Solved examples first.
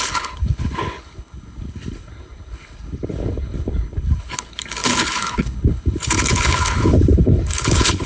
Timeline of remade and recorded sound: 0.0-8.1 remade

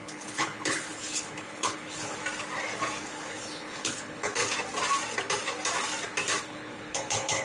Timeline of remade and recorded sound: 0.0-2.2 remade; 2.2-3.0 recorded; 3.0-4.4 remade; 4.4-6.4 recorded; 6.4-7.4 remade